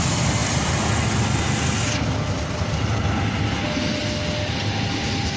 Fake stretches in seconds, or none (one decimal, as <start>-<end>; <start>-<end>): none